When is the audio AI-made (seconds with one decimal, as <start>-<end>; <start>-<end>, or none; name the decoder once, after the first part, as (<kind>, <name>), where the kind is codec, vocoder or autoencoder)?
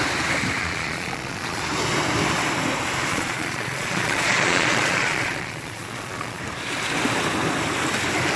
0.6-1.6 (vocoder, Vocos); 3.1-6.4